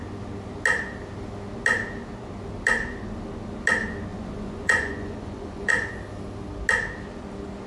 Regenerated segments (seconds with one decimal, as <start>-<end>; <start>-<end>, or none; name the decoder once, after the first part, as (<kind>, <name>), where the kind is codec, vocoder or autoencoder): 4.1-5.7 (vocoder, Vocos)